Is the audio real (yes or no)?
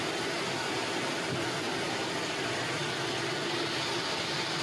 yes